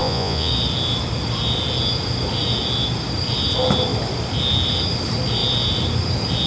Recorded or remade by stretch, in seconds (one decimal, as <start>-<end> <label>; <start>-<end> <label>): 0.0-0.5 remade; 0.5-6.5 recorded